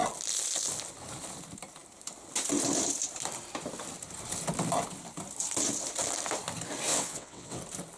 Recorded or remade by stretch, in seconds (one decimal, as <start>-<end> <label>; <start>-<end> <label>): 0.0-6.9 recorded; 6.9-7.6 remade; 7.6-8.0 recorded